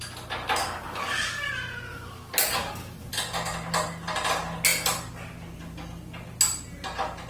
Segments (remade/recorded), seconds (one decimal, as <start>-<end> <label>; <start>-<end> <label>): 0.0-0.6 recorded; 0.6-1.5 remade; 1.5-1.9 recorded; 1.9-3.1 remade; 3.1-7.3 recorded